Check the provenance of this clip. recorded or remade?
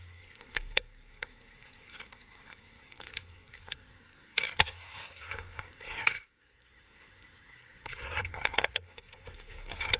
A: remade